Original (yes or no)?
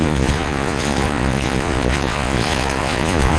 no